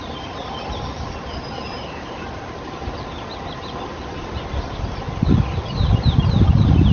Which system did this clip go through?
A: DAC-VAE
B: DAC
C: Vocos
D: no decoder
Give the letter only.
D